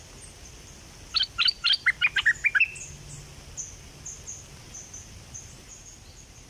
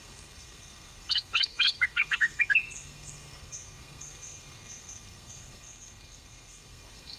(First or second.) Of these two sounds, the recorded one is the first